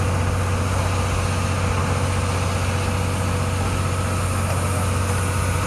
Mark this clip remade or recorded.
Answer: recorded